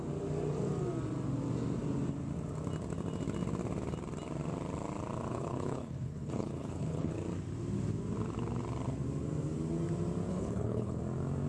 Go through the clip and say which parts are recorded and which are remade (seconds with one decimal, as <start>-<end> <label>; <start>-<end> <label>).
0.0-5.3 recorded; 5.3-7.1 remade; 7.1-10.3 recorded; 10.3-11.0 remade; 11.0-11.5 recorded